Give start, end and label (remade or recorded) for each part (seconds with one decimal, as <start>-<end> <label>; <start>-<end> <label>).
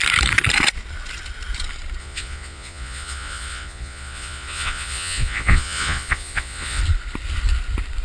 0.0-2.0 recorded; 2.0-6.8 remade; 6.8-8.0 recorded